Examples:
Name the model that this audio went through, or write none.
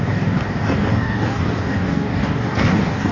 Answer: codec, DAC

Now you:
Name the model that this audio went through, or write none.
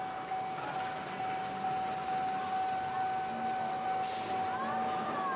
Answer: none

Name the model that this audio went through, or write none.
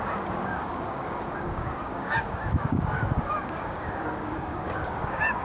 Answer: codec, DAC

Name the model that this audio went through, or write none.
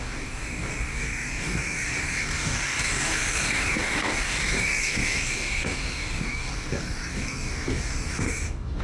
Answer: codec, DAC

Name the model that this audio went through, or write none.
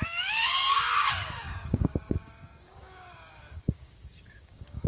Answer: codec, DAC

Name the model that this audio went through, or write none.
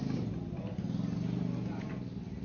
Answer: none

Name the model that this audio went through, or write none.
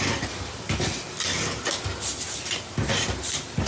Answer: none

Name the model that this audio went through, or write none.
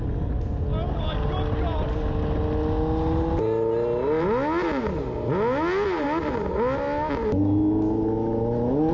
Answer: none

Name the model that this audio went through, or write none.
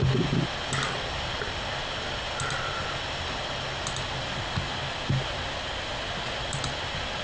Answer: none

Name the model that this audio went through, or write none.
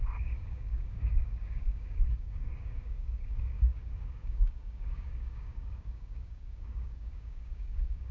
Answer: codec, DAC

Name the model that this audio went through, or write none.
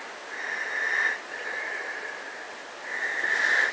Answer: none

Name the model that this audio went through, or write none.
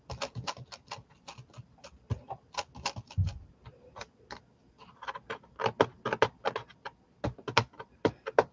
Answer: none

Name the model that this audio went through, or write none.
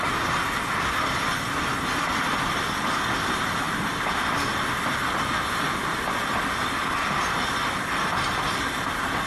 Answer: none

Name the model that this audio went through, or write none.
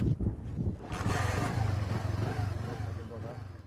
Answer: none